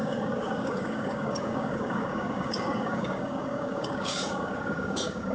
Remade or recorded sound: remade